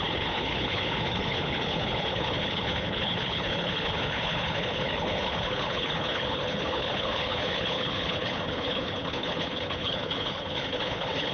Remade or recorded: remade